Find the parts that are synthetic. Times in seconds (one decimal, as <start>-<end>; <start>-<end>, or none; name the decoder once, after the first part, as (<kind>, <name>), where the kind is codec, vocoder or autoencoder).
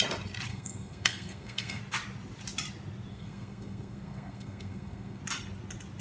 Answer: 0.5-1.8 (codec, SNAC); 3.1-5.2